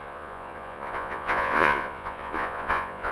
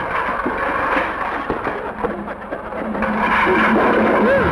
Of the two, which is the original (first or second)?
second